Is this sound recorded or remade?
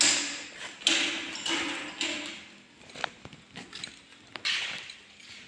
recorded